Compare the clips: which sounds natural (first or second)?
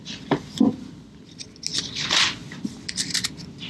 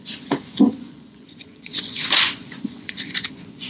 first